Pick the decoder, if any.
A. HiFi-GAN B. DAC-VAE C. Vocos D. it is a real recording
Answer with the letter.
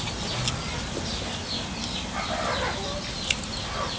D